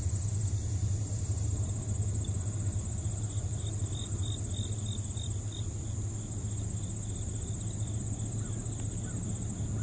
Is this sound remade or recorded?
recorded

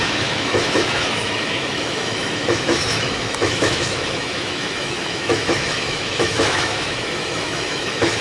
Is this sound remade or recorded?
remade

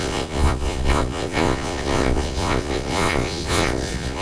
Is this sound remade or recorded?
remade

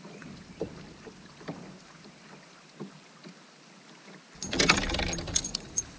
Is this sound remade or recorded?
recorded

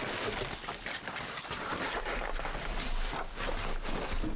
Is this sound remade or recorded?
recorded